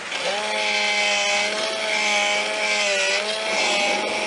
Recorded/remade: recorded